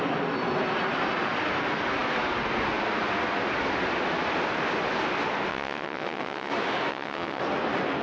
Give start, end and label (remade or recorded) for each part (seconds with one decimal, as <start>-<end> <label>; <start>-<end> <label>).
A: 0.0-5.5 recorded; 5.5-6.5 remade; 6.5-6.9 recorded; 6.9-7.4 remade; 7.4-8.0 recorded